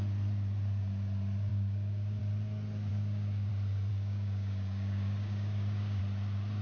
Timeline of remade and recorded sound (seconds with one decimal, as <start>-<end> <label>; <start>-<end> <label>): 0.0-1.5 recorded; 1.5-2.2 remade; 2.2-2.9 recorded; 2.9-3.5 remade; 3.5-3.9 recorded; 3.9-6.0 remade; 6.0-6.6 recorded